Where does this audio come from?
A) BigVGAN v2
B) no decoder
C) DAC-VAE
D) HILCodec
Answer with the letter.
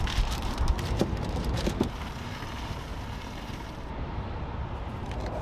A